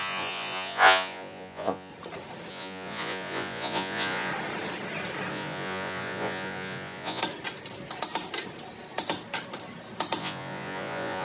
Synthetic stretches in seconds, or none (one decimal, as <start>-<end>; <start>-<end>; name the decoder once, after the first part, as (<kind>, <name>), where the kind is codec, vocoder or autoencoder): 0.0-1.9 (vocoder, Vocos); 2.5-4.3; 5.3-7.2; 10.2-11.2